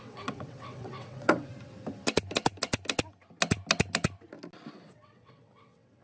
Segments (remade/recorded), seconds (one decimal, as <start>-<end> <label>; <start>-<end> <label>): 0.0-1.5 remade; 1.5-4.7 recorded; 4.7-6.0 remade